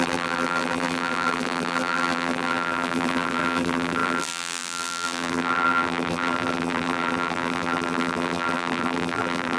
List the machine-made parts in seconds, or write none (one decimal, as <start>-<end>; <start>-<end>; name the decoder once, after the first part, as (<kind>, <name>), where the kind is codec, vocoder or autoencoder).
0.0-9.6 (vocoder, BigVGAN v2)